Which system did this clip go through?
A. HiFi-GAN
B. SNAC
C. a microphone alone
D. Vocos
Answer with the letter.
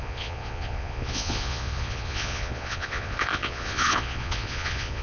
D